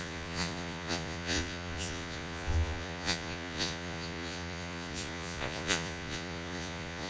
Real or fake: fake